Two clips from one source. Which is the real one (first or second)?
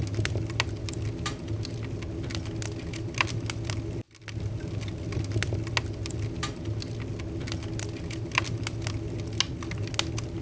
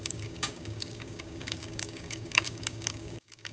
first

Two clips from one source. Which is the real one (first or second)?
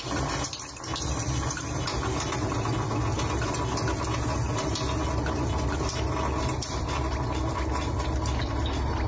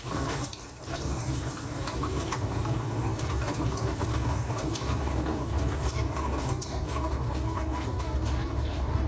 first